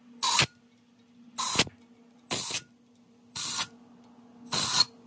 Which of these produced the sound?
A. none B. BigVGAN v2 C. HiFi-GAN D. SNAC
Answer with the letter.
A